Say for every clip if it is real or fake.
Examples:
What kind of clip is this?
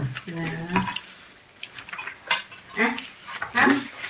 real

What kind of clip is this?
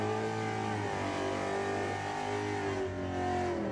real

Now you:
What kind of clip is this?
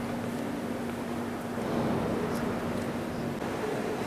real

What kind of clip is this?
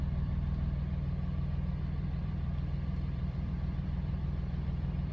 fake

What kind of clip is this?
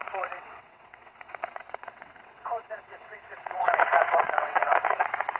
fake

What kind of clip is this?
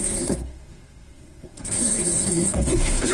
fake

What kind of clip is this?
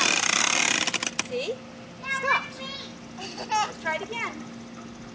real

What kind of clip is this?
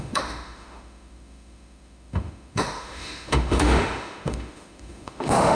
fake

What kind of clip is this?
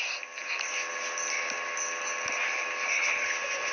real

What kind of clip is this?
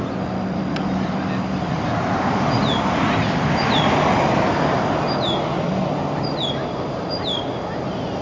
real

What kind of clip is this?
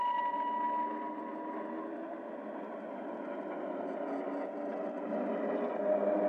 real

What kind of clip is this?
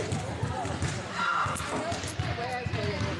real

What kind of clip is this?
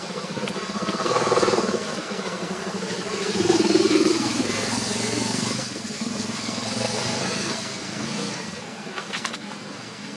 fake